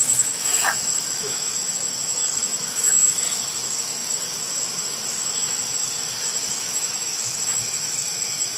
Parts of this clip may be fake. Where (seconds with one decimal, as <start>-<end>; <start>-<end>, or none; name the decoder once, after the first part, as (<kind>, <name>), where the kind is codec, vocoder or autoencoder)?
0.0-8.6 (autoencoder, DAC-VAE)